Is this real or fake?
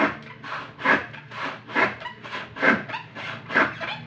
real